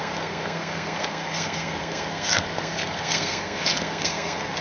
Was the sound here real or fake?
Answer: fake